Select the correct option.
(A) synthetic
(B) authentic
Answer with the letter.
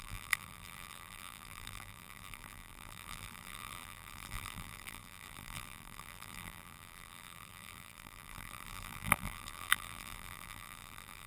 A